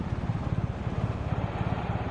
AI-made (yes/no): no